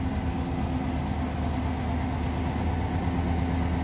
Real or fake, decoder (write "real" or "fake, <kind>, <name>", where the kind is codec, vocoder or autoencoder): real